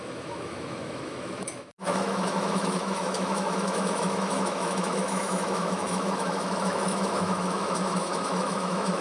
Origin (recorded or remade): remade